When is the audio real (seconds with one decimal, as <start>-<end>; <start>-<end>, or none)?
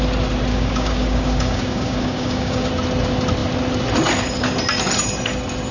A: 0.0-0.5; 2.7-5.7